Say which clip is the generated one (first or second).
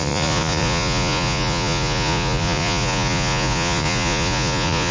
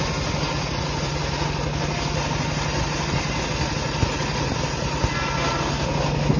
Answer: first